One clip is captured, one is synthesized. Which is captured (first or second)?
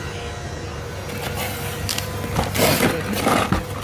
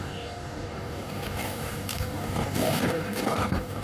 first